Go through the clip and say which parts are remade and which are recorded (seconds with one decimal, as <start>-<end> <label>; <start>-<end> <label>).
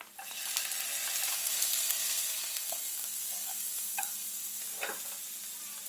0.0-1.3 recorded; 1.3-4.6 remade; 4.6-5.9 recorded